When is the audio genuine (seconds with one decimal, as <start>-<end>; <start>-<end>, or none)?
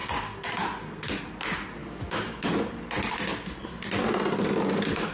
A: 0.0-1.8; 2.4-5.1